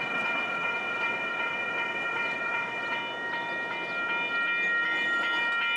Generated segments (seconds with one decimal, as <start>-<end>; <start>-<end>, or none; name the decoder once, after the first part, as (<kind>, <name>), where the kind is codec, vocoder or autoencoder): 0.0-3.0 (vocoder, WaveNeXt)